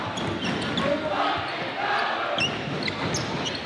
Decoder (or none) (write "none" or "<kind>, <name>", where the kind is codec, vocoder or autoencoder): none